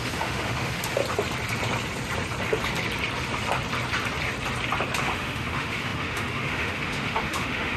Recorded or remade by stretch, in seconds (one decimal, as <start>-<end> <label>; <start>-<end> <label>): 0.0-1.0 remade; 1.0-5.0 recorded; 5.0-7.8 remade